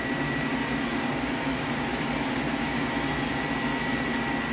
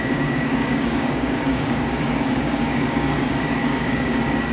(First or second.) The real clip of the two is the first